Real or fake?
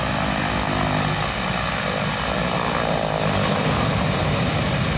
real